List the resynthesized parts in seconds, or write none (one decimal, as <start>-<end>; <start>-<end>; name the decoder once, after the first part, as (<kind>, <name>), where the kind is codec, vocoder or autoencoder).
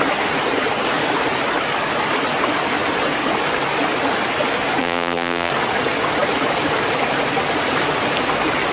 4.8-5.5 (vocoder, BigVGAN v2)